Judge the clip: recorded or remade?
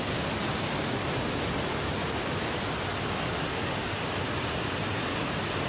recorded